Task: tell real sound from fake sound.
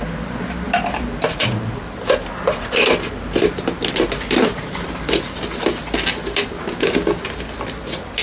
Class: real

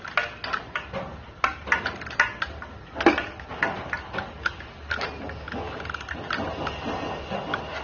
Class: real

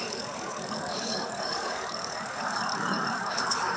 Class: fake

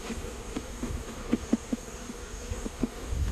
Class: fake